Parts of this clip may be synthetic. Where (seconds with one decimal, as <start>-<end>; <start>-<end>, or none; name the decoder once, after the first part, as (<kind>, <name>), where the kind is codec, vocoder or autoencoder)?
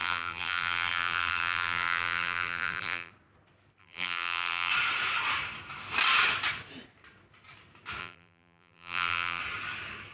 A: 0.0-3.1 (vocoder, BigVGAN v2); 3.8-4.7; 8.0-9.4